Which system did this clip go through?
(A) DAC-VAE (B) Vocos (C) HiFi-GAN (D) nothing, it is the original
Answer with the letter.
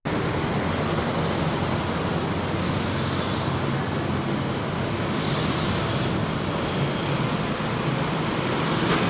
D